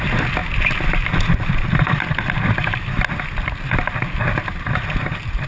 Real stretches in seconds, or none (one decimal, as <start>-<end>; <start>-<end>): 0.0-5.5